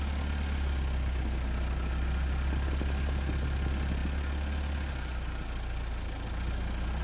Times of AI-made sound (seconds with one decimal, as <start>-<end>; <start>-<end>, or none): none